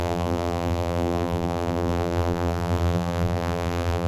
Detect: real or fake fake